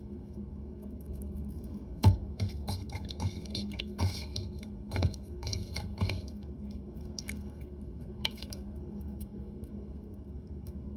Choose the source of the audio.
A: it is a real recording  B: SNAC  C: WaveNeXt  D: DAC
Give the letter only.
B